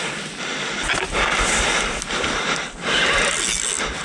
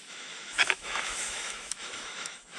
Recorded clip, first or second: first